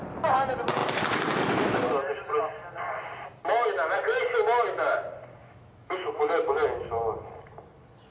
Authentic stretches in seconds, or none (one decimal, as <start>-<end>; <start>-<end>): 0.0-5.4; 6.5-8.1